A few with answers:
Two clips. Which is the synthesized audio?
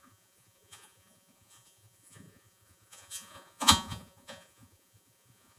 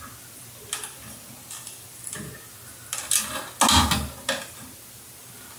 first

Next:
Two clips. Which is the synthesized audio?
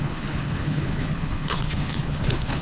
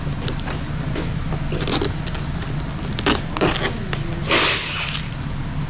first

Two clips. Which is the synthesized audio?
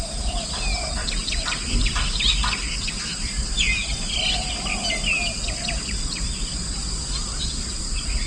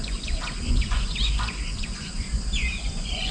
second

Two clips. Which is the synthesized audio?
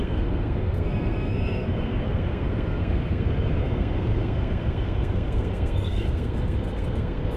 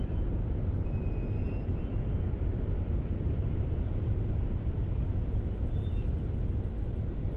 first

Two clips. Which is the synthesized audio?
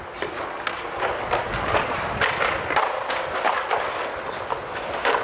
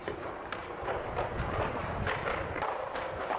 second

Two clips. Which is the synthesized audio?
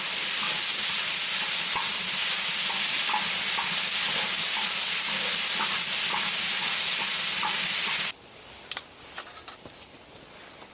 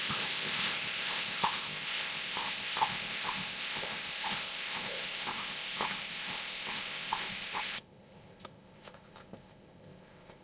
second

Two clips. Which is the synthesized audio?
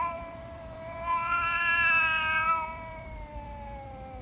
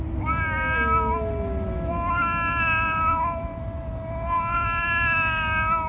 first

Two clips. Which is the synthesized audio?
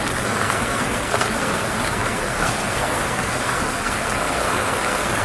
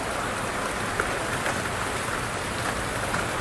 first